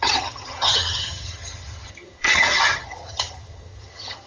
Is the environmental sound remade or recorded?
remade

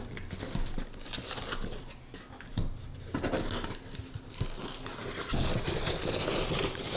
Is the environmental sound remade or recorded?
recorded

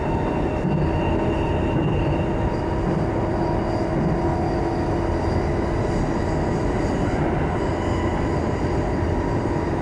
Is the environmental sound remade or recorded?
recorded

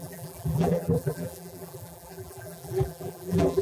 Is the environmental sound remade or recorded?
remade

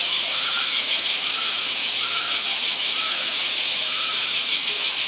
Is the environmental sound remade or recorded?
remade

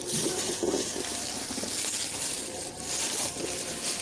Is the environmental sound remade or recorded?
recorded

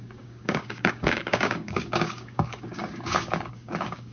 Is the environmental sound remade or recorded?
remade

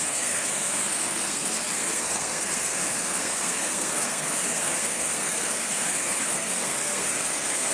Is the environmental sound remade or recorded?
remade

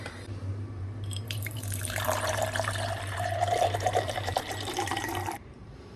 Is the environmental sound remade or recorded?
remade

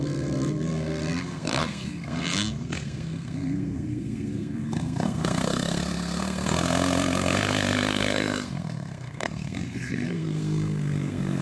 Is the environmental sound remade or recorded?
remade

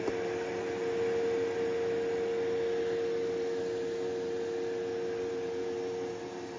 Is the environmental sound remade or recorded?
recorded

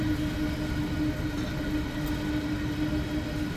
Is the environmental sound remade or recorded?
recorded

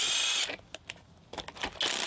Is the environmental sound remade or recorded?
recorded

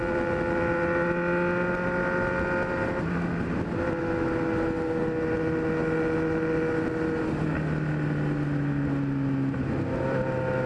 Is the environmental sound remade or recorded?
recorded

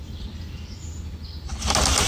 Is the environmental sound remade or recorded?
recorded